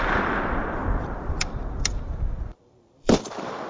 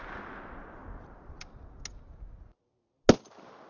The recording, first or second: second